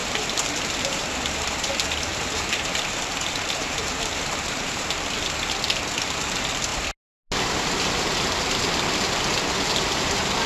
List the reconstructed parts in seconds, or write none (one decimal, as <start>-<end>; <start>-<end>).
0.0-1.7; 2.1-5.1